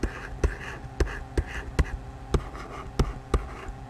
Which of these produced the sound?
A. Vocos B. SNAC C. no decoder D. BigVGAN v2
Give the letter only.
C